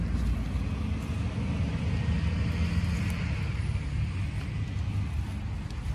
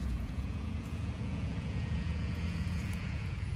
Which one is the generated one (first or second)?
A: second